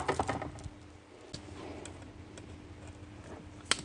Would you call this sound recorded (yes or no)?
yes